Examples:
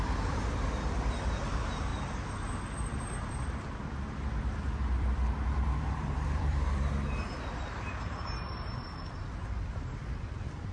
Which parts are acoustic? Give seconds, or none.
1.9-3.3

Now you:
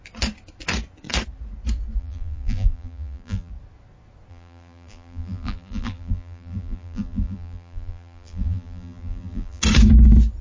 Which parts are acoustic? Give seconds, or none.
0.0-2.0; 3.5-4.3; 9.6-10.4

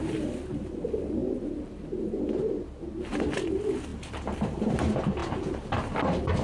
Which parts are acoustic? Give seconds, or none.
0.0-1.2; 3.2-3.9; 4.8-5.2; 5.9-6.4

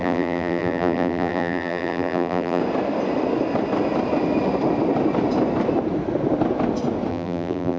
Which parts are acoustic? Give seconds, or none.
2.6-7.1

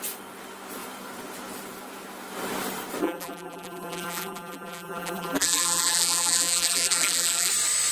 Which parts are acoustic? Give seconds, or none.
0.0-3.0; 7.5-7.9

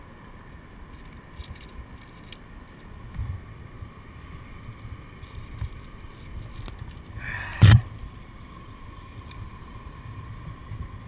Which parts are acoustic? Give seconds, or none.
0.0-7.5; 10.6-11.1

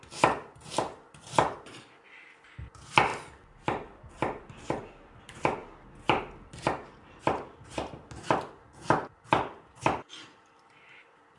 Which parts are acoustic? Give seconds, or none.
5.6-9.3

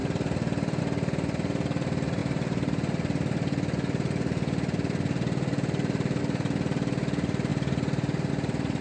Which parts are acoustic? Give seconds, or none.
0.8-2.2; 6.2-7.5; 8.3-8.8